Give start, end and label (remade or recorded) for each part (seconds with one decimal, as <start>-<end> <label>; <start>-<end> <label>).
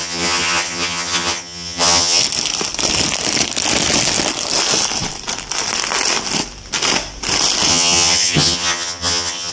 0.0-2.2 remade; 2.2-7.7 recorded; 7.7-9.5 remade